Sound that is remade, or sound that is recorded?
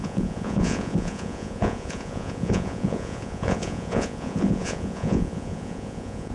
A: remade